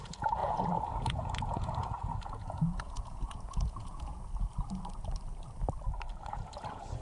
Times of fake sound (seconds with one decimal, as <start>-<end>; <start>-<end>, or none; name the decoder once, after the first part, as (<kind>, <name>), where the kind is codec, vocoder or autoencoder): 0.0-4.1 (vocoder, Vocos); 6.3-7.0